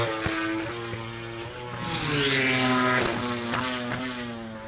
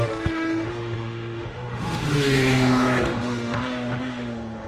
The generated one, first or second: second